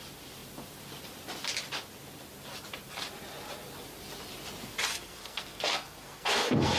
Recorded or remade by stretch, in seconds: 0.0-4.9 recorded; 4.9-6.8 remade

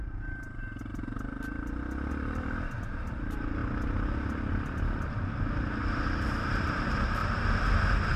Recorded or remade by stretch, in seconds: 0.0-0.9 remade; 0.9-2.1 recorded; 2.1-3.6 remade; 3.6-6.4 recorded; 6.4-7.2 remade; 7.2-8.2 recorded

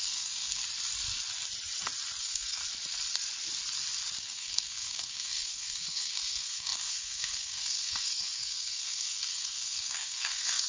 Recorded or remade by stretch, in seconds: 0.0-0.6 remade; 0.6-2.2 recorded; 2.2-2.6 remade; 2.6-4.2 recorded; 4.2-10.7 remade

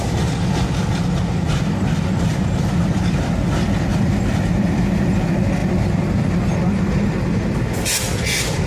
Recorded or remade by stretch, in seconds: 0.0-8.7 recorded

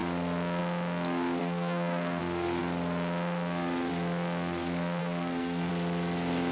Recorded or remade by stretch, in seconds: 0.0-1.4 recorded; 1.4-2.2 remade; 2.2-5.0 recorded; 5.0-5.7 remade; 5.7-6.5 recorded

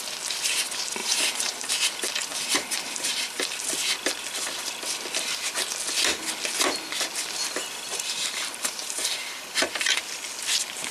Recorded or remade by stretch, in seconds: 0.0-1.0 recorded; 1.0-1.7 remade; 1.7-2.3 recorded; 2.3-3.6 remade; 3.6-7.9 recorded; 7.9-10.0 remade; 10.0-10.9 recorded

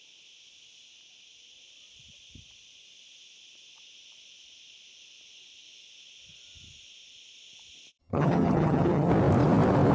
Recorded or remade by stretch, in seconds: 0.0-8.0 recorded; 8.0-9.1 remade; 9.1-9.9 recorded